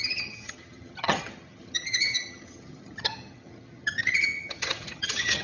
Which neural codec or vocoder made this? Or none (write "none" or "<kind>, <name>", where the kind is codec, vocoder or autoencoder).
vocoder, HiFi-GAN